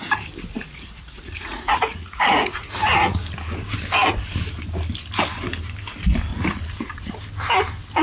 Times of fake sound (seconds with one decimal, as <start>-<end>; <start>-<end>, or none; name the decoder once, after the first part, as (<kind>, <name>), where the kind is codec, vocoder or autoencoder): 0.5-3.2 (vocoder, Vocos); 6.3-7.1